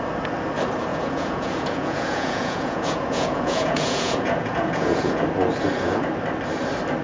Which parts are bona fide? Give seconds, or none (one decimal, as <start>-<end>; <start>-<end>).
0.0-0.9; 5.1-7.0